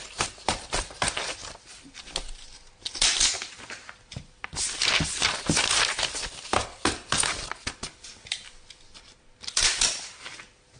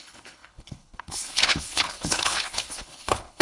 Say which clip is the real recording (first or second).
first